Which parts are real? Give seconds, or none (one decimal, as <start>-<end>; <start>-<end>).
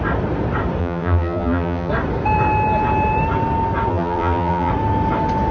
0.0-0.8; 1.9-3.9; 4.7-5.5